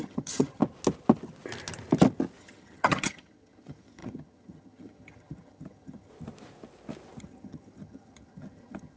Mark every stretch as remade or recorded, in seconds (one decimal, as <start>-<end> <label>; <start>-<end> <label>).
0.0-0.6 remade; 0.6-2.4 recorded; 2.4-6.1 remade; 6.1-7.2 recorded; 7.2-9.0 remade